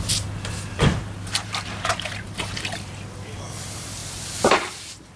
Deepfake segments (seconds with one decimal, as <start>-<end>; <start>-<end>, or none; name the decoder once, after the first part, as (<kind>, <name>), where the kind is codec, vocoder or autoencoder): 0.7-2.1 (vocoder, BigVGAN v2); 4.0-4.7